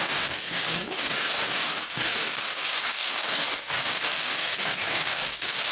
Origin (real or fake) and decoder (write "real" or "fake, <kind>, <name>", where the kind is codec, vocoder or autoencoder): fake, codec, DAC